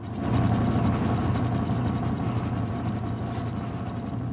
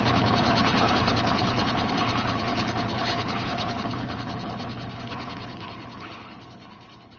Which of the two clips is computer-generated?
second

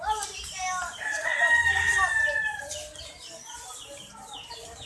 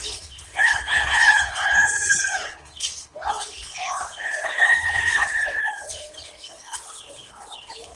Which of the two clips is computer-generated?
second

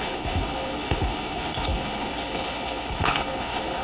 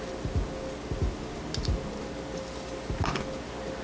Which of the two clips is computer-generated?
first